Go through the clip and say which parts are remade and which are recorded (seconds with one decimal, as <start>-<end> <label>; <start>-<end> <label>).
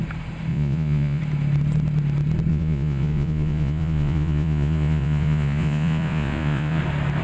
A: 0.0-0.5 recorded; 0.5-1.2 remade; 1.2-2.5 recorded; 2.5-6.8 remade; 6.8-7.2 recorded